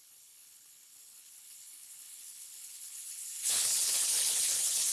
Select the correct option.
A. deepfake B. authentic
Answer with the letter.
A